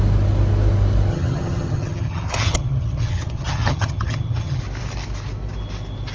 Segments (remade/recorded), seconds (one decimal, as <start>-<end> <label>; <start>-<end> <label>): 0.0-1.1 recorded; 1.1-4.6 remade; 4.6-6.1 recorded